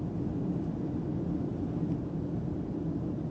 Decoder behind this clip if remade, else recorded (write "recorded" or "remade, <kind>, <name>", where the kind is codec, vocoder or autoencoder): recorded